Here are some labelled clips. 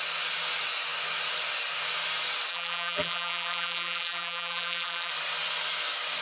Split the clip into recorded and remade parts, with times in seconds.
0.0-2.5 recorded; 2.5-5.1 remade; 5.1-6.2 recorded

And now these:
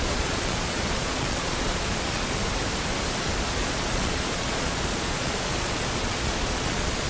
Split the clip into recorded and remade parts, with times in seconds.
0.0-2.4 remade; 2.4-3.2 recorded; 3.2-7.1 remade

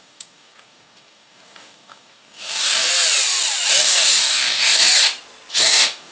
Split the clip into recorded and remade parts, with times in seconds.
0.0-2.9 remade; 2.9-3.7 recorded; 3.7-4.9 remade; 4.9-5.5 recorded; 5.5-6.1 remade

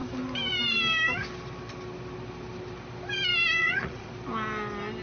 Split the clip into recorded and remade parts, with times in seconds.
0.0-3.6 recorded; 3.6-4.1 remade; 4.1-5.0 recorded

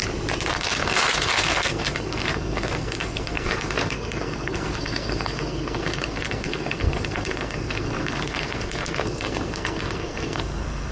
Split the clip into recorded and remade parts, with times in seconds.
0.0-0.5 recorded; 0.5-10.9 remade

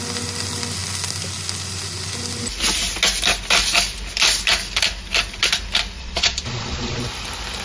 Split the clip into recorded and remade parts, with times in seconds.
0.0-6.0 recorded; 6.0-7.0 remade; 7.0-7.6 recorded